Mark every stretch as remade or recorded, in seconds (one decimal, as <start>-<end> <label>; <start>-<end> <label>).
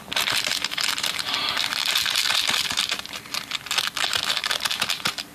0.0-5.3 recorded